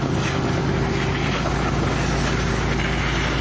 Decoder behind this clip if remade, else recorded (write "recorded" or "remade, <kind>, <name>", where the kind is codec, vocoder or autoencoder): recorded